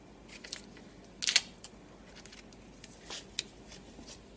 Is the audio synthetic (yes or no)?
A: no